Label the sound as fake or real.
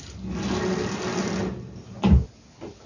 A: real